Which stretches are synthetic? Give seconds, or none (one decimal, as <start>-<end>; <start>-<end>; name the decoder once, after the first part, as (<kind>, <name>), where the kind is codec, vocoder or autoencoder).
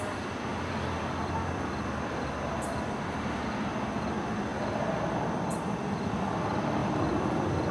0.5-1.7 (vocoder, BigVGAN v2); 6.8-7.7